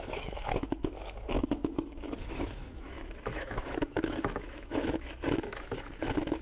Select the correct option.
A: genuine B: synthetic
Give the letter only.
B